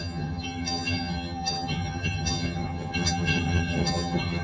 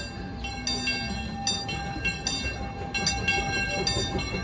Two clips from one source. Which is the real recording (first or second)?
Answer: second